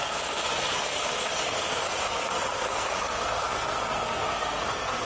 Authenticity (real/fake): fake